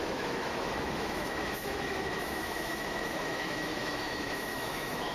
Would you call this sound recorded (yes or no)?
no